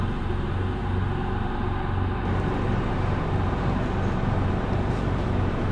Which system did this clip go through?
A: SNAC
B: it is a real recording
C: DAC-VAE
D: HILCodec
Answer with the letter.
B